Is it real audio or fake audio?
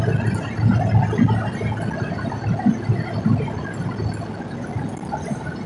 real